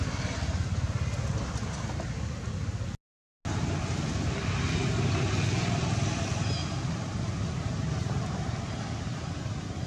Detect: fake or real real